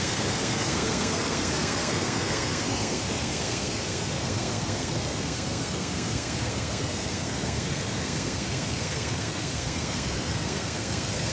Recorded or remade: remade